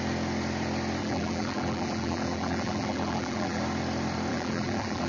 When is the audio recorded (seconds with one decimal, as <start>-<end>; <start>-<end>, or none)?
0.0-1.0; 3.6-4.3